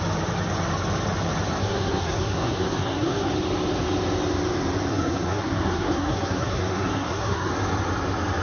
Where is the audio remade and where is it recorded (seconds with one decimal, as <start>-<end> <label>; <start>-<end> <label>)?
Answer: 0.0-1.6 recorded; 1.6-3.3 remade; 3.3-4.9 recorded; 4.9-7.5 remade; 7.5-8.4 recorded